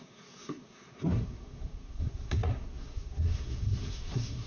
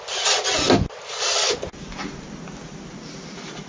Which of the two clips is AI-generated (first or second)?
first